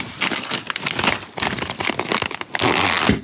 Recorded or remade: recorded